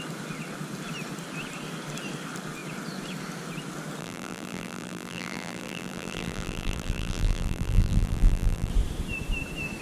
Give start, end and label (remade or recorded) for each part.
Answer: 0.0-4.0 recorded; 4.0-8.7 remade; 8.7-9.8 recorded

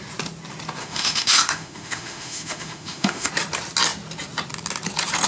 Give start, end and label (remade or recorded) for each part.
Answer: 0.0-0.8 recorded; 0.8-3.3 remade; 3.3-5.3 recorded

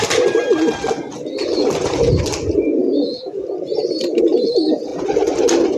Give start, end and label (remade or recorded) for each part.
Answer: 0.0-2.8 recorded; 2.8-3.4 remade; 3.4-5.8 recorded

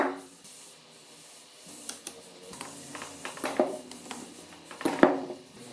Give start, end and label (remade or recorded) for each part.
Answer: 0.0-5.7 remade

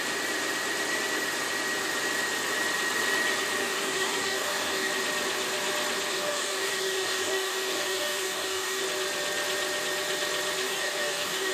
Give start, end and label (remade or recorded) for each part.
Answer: 0.0-3.6 recorded; 3.6-4.9 remade; 4.9-6.1 recorded; 6.1-8.8 remade; 8.8-10.6 recorded; 10.6-11.5 remade

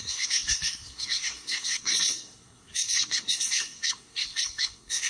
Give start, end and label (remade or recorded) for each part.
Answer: 0.0-5.1 remade

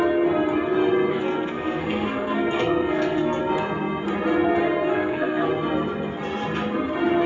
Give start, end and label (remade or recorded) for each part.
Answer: 0.0-1.1 recorded; 1.1-3.4 remade; 3.4-4.6 recorded; 4.6-5.5 remade; 5.5-7.3 recorded

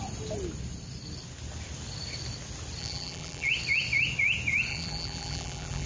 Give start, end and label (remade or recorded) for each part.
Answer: 0.0-2.8 recorded; 2.8-3.5 remade; 3.5-4.7 recorded; 4.7-5.9 remade